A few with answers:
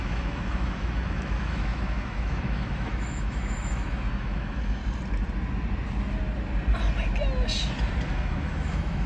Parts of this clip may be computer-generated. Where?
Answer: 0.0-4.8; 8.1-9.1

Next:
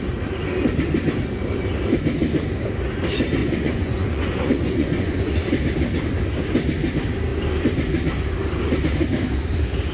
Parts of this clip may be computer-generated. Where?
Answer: 3.4-5.3

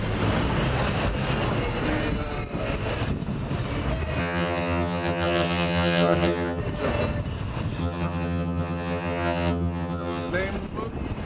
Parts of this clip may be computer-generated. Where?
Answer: 4.2-6.6; 7.8-10.3

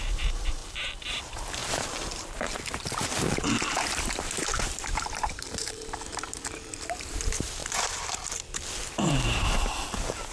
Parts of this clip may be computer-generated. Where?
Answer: 0.0-0.6; 1.2-7.6; 9.7-10.3